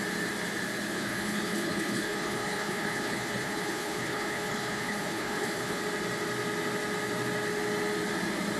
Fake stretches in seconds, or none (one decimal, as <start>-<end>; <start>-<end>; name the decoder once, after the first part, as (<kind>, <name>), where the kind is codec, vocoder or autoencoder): 0.9-5.8 (codec, HILCodec)